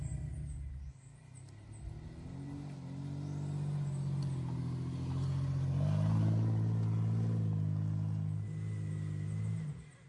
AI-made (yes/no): no